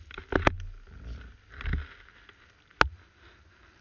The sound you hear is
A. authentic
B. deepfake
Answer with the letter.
A